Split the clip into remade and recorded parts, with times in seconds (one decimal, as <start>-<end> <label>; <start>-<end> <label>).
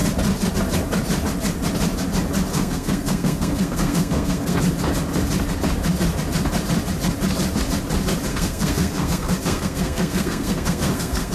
0.0-2.5 recorded; 2.5-4.6 remade; 4.6-8.3 recorded; 8.3-11.3 remade